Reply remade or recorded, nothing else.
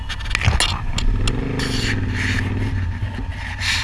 recorded